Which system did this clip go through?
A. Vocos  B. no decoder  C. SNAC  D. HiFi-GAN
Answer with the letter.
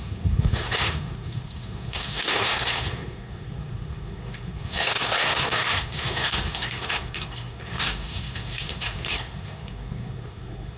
C